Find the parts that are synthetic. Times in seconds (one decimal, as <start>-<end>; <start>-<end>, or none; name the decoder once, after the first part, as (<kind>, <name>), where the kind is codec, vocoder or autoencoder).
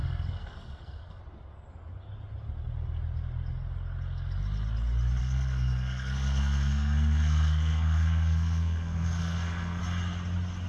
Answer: 0.0-1.2 (codec, SNAC); 5.2-9.8